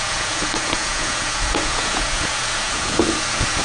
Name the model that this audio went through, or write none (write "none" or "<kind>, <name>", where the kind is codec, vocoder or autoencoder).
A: vocoder, Vocos